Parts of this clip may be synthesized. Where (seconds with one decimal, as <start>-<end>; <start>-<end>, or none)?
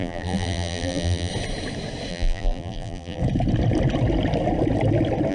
0.0-1.3; 2.1-3.2